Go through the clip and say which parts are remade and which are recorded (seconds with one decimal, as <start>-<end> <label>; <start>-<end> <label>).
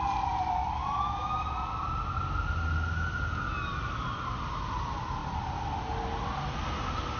0.0-7.2 recorded